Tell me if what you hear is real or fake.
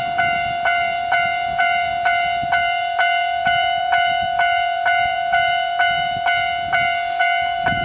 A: fake